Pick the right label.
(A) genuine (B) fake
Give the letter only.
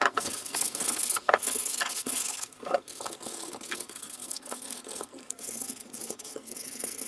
B